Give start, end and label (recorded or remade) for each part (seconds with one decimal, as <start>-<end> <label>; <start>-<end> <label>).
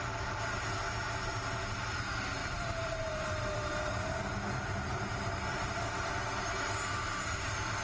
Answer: 0.0-2.4 recorded; 2.4-4.2 remade; 4.2-5.5 recorded; 5.5-6.1 remade; 6.1-6.9 recorded; 6.9-7.8 remade